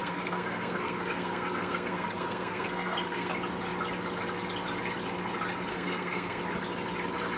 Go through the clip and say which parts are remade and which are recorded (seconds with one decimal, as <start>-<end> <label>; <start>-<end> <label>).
0.0-3.3 remade; 3.3-5.7 recorded; 5.7-6.4 remade; 6.4-7.4 recorded